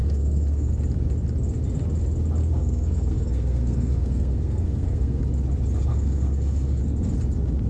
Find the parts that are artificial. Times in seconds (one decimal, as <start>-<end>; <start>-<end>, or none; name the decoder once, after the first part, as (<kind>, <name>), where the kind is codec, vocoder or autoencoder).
0.0-0.7 (codec, SNAC); 2.4-5.2; 5.9-6.8